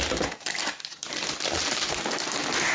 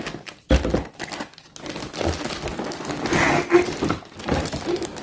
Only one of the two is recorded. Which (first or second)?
second